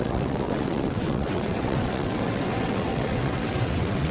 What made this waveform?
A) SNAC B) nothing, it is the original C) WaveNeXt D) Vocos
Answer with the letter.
C